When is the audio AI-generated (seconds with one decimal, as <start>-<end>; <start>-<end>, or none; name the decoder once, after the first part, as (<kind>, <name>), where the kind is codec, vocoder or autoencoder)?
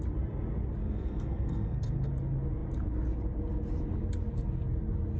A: 0.8-2.1 (codec, SNAC)